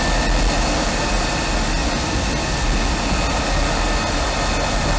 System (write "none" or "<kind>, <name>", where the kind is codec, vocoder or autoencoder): none